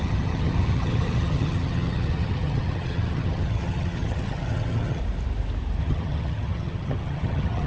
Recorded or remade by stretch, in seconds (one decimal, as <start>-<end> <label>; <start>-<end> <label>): 0.0-5.0 remade; 5.0-5.8 recorded; 5.8-7.7 remade